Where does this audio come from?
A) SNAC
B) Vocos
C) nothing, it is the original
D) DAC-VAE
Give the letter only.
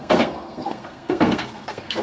A